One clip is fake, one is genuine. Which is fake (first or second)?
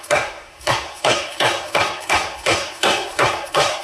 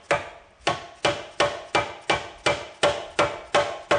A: first